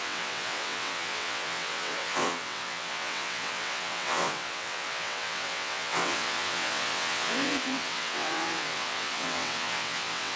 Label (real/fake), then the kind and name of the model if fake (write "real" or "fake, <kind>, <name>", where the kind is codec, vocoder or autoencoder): fake, vocoder, WaveNeXt